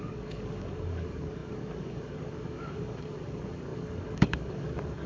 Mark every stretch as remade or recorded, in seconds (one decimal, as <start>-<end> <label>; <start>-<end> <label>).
0.0-5.1 remade